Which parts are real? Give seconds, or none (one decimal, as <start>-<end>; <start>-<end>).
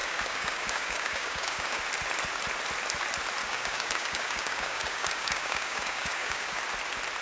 1.8-3.4; 6.6-7.2